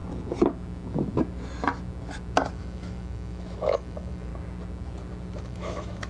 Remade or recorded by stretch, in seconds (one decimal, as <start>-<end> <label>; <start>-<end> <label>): 0.0-2.5 recorded; 2.5-4.3 remade; 4.3-5.4 recorded; 5.4-6.1 remade

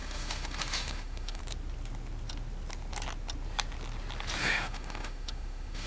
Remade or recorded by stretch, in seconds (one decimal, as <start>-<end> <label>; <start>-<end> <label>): 0.0-1.4 remade; 1.4-4.4 recorded; 4.4-5.9 remade

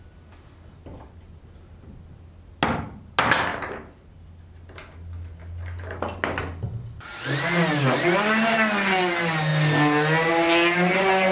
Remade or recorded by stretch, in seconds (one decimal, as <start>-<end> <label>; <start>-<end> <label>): 0.0-11.3 recorded

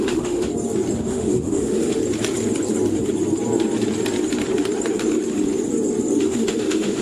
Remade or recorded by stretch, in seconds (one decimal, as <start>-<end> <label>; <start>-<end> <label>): 0.0-0.5 remade; 0.5-1.1 recorded; 1.1-2.0 remade; 2.0-6.2 recorded; 6.2-7.0 remade

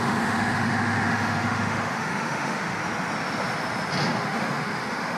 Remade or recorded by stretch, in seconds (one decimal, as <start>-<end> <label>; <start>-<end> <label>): 0.0-2.8 remade; 2.8-4.2 recorded; 4.2-5.2 remade

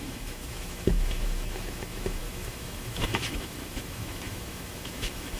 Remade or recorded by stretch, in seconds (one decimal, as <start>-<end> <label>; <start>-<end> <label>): 0.0-5.4 remade

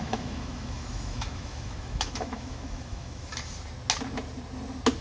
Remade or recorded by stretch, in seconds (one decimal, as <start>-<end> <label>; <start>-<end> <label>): 0.0-3.3 remade; 3.3-5.0 recorded